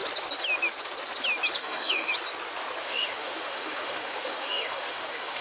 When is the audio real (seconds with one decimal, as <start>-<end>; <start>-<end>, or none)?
0.0-1.6; 2.1-2.8